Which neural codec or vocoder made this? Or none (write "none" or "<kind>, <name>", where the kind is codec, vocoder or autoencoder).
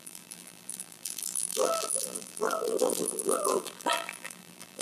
vocoder, BigVGAN v2